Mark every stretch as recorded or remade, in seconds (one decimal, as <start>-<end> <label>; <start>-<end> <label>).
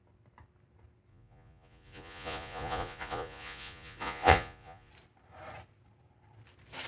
0.0-1.1 recorded; 1.1-4.9 remade; 4.9-6.9 recorded